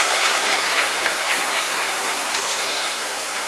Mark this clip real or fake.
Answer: fake